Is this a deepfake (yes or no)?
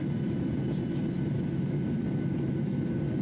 no